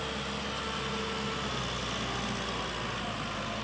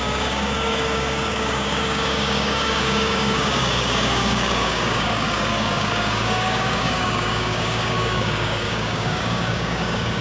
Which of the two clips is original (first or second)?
first